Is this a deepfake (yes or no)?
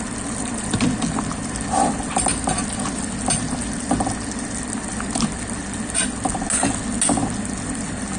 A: no